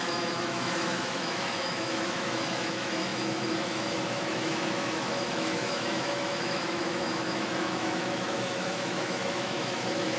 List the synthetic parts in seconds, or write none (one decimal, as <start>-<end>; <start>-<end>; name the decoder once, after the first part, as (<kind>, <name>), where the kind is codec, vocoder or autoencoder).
0.0-10.2 (autoencoder, DAC-VAE)